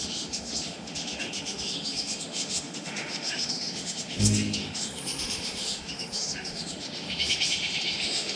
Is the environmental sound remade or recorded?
remade